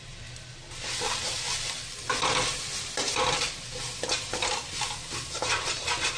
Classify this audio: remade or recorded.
recorded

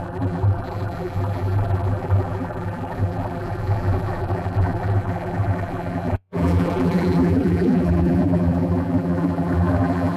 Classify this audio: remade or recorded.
remade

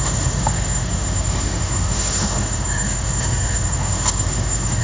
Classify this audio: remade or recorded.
remade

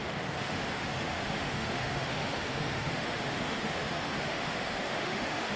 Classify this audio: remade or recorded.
remade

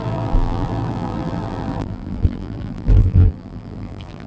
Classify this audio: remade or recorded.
remade